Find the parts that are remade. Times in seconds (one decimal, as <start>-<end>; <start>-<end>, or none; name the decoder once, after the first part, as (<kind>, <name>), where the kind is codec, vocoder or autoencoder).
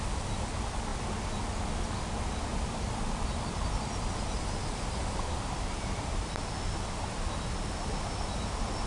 none